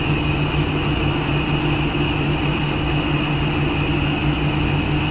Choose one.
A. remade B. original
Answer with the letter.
B